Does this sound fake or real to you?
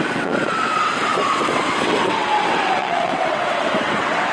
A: fake